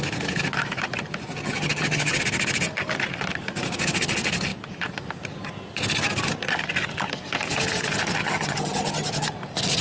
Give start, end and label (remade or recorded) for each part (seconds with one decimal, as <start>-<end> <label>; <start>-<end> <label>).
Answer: 0.0-1.4 recorded; 1.4-2.2 remade; 2.2-8.2 recorded; 8.2-9.3 remade; 9.3-9.8 recorded